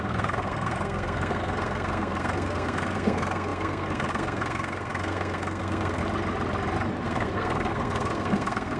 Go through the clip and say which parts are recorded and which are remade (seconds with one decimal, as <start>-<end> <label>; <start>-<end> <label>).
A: 0.0-6.0 remade; 6.0-7.0 recorded; 7.0-8.8 remade